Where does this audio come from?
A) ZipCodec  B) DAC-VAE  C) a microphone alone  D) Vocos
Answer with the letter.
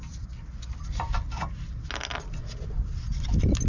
C